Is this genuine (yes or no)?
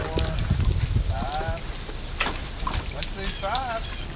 yes